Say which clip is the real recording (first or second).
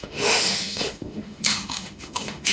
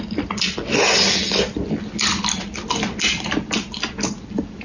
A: second